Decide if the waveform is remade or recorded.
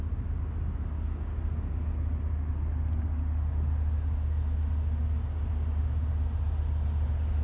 recorded